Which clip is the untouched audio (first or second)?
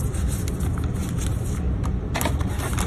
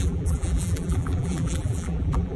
first